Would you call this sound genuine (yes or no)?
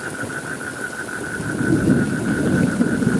yes